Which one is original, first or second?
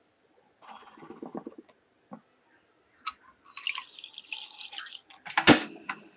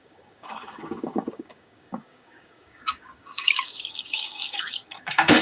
first